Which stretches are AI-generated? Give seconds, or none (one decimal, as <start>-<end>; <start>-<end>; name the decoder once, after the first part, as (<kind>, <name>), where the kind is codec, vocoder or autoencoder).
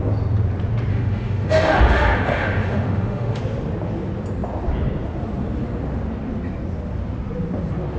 0.9-3.4 (autoencoder, DAC-VAE)